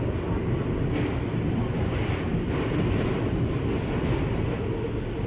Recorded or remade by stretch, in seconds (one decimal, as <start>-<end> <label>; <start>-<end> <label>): 0.0-5.3 recorded